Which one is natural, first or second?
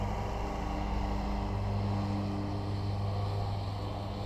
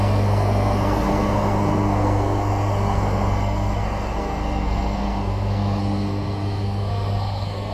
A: first